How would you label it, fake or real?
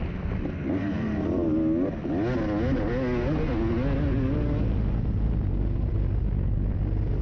real